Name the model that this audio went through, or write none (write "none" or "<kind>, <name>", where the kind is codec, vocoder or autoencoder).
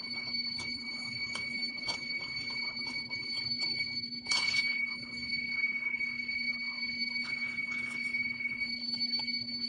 codec, HILCodec